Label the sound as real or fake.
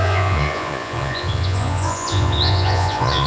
fake